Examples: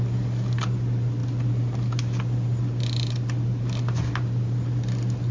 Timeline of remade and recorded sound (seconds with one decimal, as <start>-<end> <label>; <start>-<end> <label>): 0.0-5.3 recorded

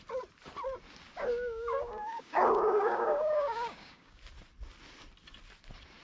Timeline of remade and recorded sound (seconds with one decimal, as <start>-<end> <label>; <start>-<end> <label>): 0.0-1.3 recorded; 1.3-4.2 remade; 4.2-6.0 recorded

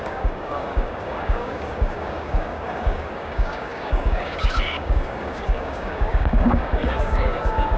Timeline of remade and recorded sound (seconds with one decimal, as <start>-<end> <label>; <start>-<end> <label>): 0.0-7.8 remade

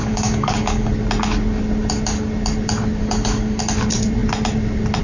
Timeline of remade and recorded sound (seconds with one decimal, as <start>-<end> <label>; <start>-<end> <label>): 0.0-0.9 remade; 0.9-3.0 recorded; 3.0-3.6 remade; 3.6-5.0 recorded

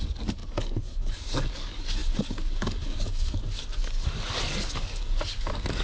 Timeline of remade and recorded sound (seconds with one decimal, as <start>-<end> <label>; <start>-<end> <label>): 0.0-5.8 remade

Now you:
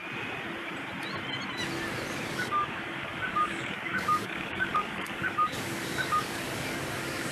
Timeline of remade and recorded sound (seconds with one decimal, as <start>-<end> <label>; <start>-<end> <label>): 0.0-2.3 recorded; 2.3-7.3 remade

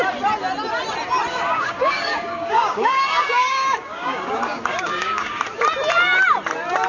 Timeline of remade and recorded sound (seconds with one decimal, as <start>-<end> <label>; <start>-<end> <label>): 0.0-1.3 recorded; 1.3-5.4 remade; 5.4-6.9 recorded